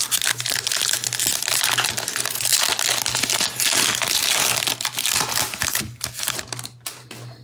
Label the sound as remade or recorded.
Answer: recorded